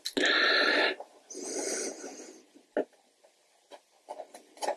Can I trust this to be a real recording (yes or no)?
yes